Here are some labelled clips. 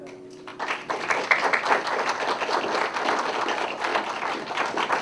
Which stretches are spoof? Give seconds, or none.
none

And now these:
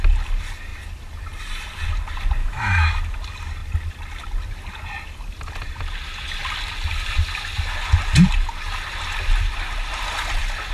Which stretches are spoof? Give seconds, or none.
2.4-3.0 (autoencoder, DAC-VAE)

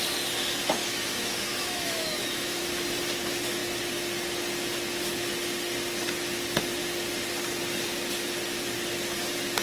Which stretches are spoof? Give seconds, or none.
0.8-2.6 (autoencoder, DAC-VAE)

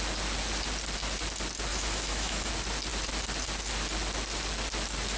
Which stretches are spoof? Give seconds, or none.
1.7-2.5 (autoencoder, DAC-VAE)

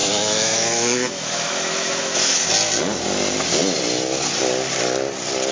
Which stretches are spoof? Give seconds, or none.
0.0-2.5 (autoencoder, DAC-VAE)

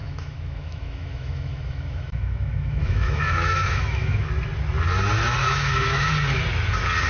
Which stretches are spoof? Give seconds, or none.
0.0-4.3 (autoencoder, DAC-VAE); 5.4-6.1

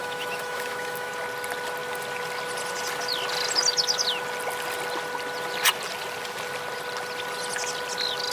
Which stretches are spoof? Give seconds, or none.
0.0-1.1 (autoencoder, DAC-VAE)

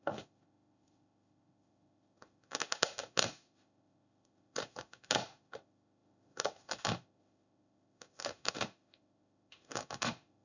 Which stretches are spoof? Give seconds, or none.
0.0-10.4 (autoencoder, DAC-VAE)